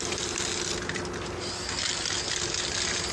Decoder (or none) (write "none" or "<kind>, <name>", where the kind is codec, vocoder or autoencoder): none